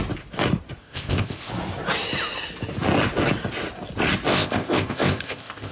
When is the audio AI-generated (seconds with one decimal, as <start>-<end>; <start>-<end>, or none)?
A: 0.8-1.5; 4.3-5.7